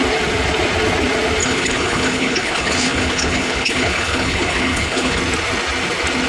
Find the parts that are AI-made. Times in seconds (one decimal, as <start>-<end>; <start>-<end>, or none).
1.4-5.2